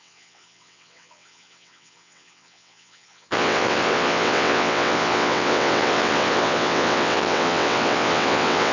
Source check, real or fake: fake